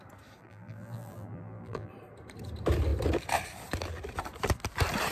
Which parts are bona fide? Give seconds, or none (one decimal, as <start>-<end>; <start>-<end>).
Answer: 0.0-0.4; 1.9-5.1